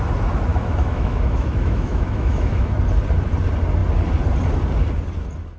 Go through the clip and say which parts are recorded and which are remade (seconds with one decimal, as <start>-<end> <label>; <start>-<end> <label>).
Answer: 0.0-0.5 recorded; 0.5-2.8 remade; 2.8-5.6 recorded